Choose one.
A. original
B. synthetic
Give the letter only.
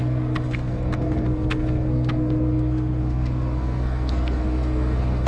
B